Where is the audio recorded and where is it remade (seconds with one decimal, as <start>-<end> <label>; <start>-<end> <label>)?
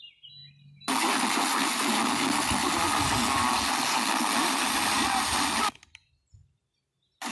0.0-7.3 recorded